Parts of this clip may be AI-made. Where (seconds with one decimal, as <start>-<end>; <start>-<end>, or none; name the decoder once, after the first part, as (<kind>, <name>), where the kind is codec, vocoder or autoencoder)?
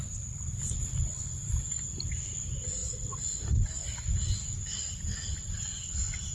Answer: none